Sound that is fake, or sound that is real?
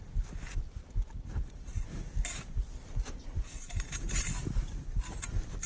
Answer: real